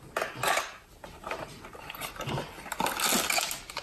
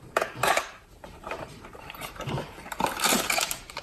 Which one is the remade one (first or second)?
second